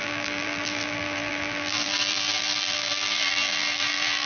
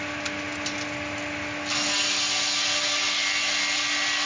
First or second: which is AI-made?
first